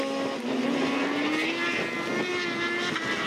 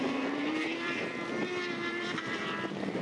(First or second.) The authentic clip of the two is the first